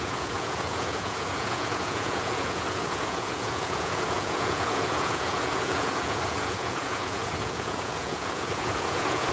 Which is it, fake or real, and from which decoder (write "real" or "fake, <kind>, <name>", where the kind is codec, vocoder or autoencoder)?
fake, vocoder, Vocos